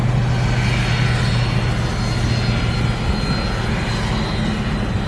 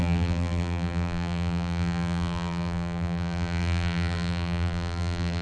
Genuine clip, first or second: first